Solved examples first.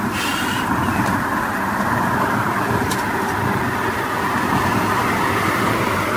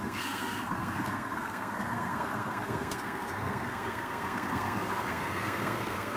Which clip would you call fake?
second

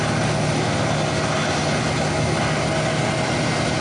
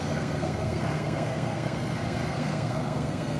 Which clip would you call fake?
second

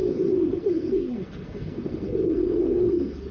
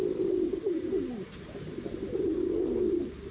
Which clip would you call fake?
first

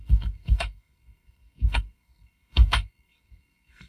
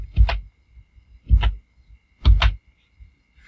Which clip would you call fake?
first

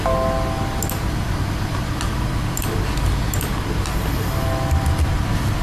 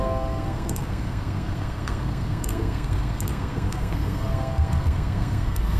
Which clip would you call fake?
second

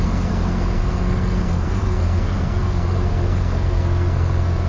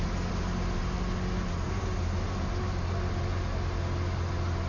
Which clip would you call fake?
first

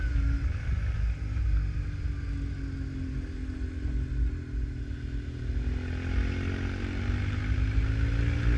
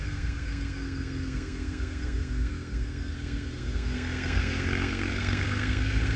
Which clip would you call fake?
second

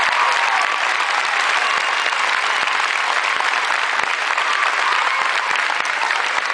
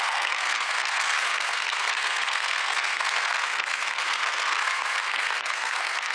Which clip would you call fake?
second